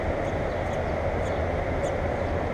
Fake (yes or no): no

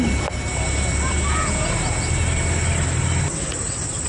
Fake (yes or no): no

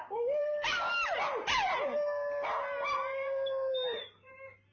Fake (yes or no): no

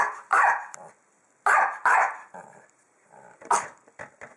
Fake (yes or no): no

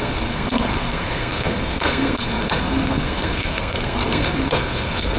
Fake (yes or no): yes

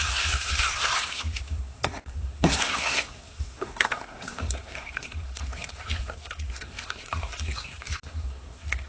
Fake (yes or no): yes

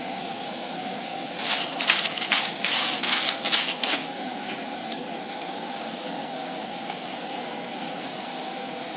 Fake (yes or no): yes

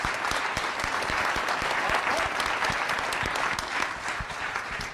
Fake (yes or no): no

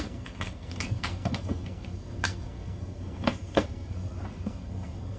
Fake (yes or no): yes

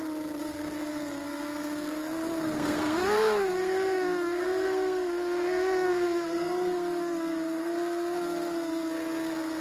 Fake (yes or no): yes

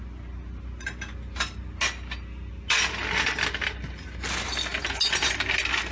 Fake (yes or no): no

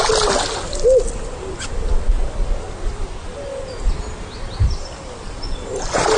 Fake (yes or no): no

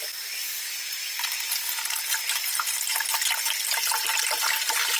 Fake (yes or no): no